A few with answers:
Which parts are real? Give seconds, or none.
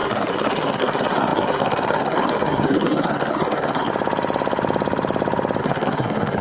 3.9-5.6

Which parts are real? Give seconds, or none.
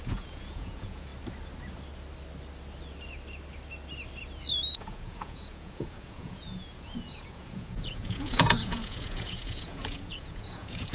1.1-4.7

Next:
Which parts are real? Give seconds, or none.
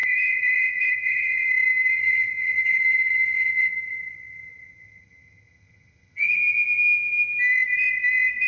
1.5-1.9; 6.4-8.5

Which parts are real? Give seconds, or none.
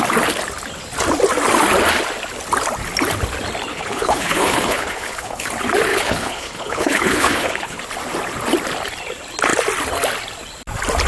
0.0-3.7; 5.5-5.9; 7.8-11.1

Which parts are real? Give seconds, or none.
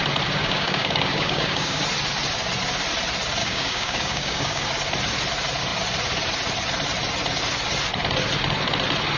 0.0-0.4; 1.8-3.4; 4.7-9.2